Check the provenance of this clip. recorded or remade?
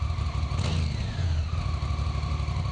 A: recorded